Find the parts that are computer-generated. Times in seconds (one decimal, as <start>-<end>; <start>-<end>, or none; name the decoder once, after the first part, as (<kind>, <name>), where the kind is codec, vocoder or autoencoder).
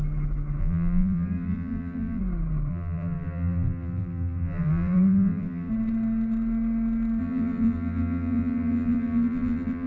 0.6-2.2 (vocoder, BigVGAN v2); 2.7-5.7; 7.2-9.9